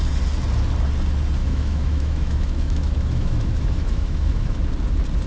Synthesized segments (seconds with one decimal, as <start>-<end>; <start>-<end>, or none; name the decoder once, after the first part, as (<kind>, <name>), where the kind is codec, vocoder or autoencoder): 1.4-4.6 (autoencoder, DAC-VAE)